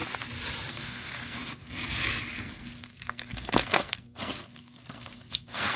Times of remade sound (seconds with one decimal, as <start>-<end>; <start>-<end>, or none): 0.7-5.8

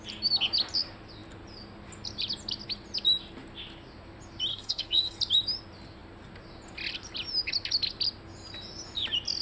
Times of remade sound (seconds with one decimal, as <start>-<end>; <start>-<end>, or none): 4.5-5.2

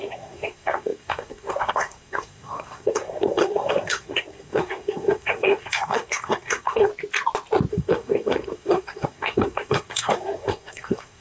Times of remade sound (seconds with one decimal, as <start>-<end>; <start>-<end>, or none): 0.0-6.9; 7.7-11.2